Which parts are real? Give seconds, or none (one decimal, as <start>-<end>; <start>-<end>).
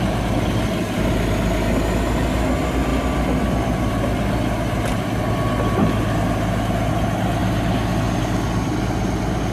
0.0-9.5